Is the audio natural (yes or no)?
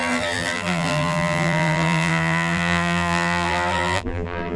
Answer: no